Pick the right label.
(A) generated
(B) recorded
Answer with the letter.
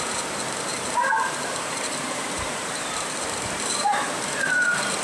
A